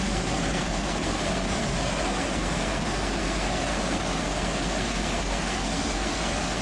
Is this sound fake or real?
fake